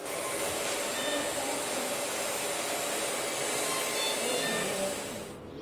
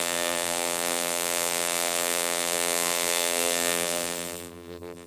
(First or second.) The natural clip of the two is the first